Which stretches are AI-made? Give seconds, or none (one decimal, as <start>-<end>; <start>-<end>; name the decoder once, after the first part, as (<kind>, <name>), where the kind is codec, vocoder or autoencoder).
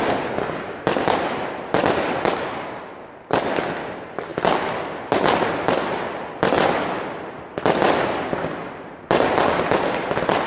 none